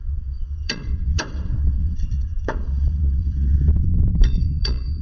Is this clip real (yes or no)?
no